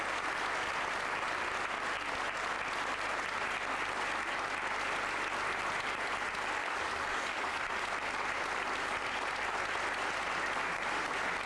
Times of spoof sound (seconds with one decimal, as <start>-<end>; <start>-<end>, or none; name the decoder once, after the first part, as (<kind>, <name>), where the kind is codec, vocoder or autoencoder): 6.6-7.7 (codec, DAC)